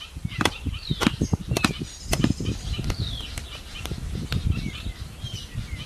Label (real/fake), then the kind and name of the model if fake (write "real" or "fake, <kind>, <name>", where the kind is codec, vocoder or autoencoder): fake, vocoder, BigVGAN v2